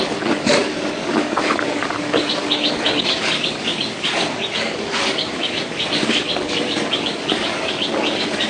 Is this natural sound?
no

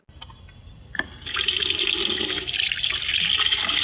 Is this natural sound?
yes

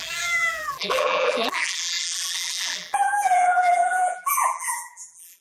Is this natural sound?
no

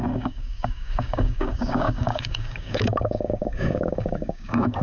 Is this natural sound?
no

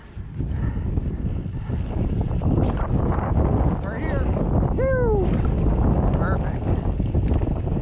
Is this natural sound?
yes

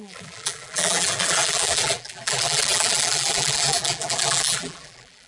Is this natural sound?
no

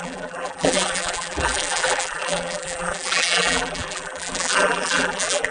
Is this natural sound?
no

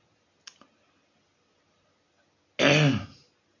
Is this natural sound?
yes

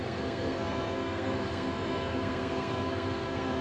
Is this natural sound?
no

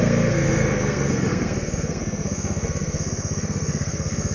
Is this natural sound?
no